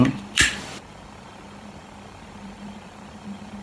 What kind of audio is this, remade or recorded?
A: remade